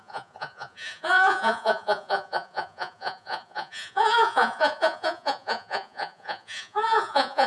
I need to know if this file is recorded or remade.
remade